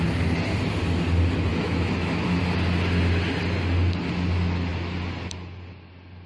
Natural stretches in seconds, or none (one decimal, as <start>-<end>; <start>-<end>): 0.0-1.5; 2.4-6.3